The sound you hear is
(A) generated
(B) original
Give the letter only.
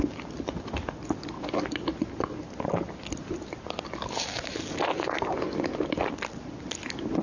B